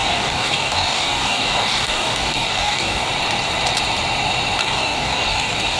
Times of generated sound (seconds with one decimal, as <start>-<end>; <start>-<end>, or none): 0.0-3.1; 4.6-5.8

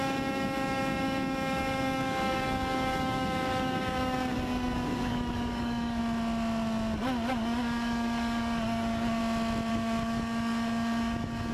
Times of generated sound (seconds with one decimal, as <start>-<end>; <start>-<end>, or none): 0.0-6.0; 7.3-9.2; 9.7-11.5

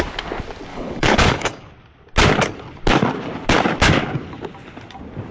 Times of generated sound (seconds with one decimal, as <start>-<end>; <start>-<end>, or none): 0.7-1.7

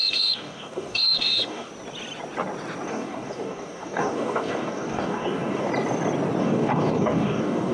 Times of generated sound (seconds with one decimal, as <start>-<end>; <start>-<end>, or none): 0.0-1.7; 2.9-5.7; 6.4-7.7

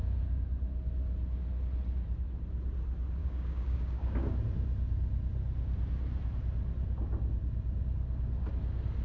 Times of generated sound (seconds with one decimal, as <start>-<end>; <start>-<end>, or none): 3.2-4.3

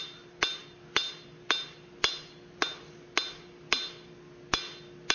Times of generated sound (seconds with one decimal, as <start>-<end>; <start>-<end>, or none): none

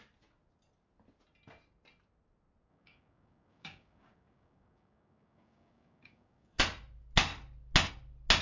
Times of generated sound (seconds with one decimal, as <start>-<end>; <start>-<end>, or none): 2.7-6.6